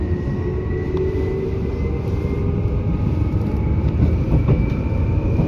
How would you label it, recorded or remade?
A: recorded